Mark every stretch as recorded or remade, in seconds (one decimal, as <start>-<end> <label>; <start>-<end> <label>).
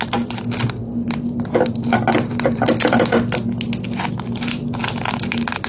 0.0-5.7 recorded